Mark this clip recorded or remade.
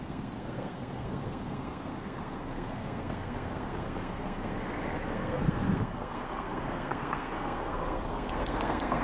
remade